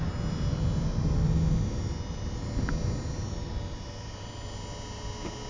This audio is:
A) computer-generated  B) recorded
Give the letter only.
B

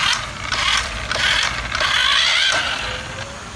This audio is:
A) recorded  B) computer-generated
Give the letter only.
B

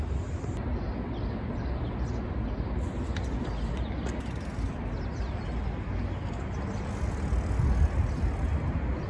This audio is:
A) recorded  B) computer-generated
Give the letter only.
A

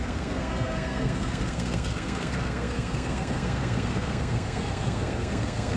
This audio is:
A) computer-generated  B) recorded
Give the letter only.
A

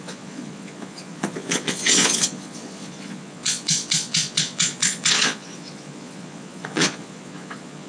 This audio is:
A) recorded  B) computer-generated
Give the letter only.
B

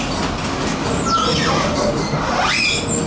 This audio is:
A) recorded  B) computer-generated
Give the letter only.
A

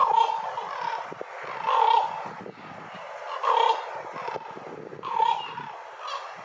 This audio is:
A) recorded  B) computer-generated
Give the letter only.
A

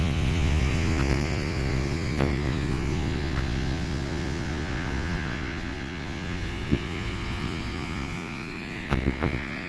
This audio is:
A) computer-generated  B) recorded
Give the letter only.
A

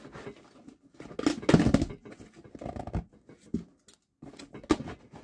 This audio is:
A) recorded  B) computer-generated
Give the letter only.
A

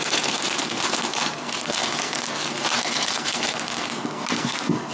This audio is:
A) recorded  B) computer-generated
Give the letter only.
B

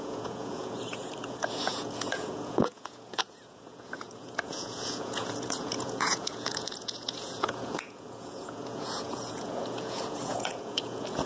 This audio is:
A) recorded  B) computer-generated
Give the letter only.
B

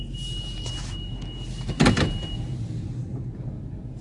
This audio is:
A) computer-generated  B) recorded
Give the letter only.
B